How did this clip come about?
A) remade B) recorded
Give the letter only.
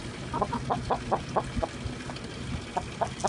B